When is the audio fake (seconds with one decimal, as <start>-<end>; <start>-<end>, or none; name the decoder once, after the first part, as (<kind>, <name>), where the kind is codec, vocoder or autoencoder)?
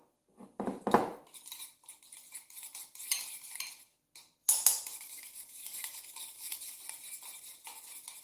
4.4-6.8 (autoencoder, DAC-VAE)